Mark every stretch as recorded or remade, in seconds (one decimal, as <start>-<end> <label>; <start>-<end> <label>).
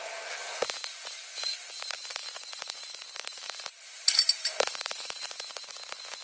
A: 0.0-2.0 recorded; 2.0-5.7 remade; 5.7-6.2 recorded